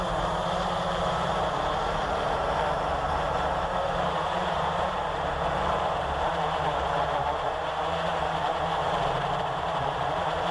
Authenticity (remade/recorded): remade